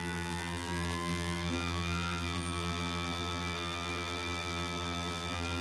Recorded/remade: remade